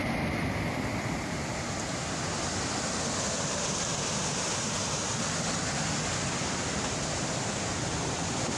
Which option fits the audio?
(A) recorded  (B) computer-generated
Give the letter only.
A